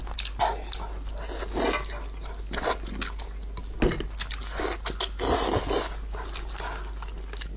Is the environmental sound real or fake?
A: real